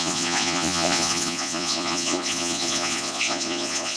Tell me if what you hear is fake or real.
fake